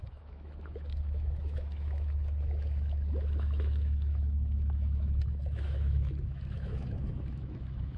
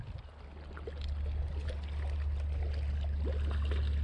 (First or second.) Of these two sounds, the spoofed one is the first